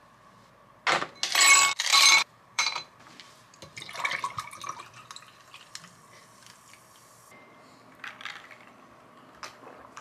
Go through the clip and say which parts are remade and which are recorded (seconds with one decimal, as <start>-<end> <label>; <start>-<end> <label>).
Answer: 0.0-1.9 recorded; 1.9-2.9 remade; 2.9-10.0 recorded